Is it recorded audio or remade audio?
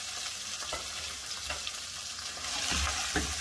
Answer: recorded